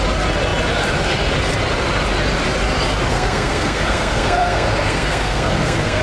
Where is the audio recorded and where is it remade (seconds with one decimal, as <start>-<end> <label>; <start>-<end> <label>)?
0.0-3.1 recorded; 3.1-6.0 remade